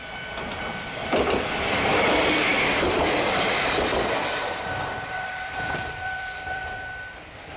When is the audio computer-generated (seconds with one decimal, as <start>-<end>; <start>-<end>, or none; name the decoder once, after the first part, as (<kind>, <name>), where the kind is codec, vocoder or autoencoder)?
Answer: 0.0-7.6 (vocoder, BigVGAN v2)